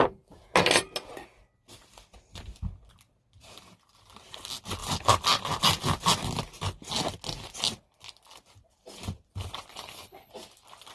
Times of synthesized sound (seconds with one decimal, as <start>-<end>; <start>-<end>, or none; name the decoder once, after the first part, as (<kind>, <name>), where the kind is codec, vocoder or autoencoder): 9.7-10.3 (codec, HILCodec)